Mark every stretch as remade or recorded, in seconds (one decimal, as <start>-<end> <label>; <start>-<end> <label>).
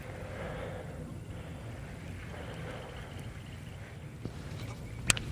0.0-5.3 recorded